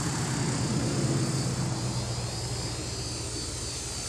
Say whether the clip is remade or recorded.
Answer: recorded